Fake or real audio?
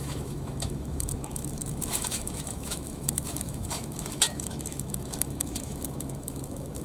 fake